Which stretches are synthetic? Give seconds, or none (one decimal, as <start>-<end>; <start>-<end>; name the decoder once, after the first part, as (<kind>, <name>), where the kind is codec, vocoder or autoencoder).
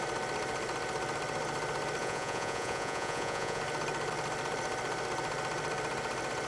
2.0-3.6 (vocoder, Vocos)